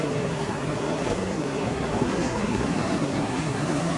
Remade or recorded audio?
remade